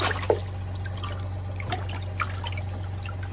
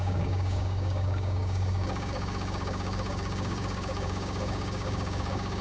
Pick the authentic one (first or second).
first